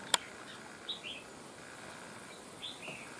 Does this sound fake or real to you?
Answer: real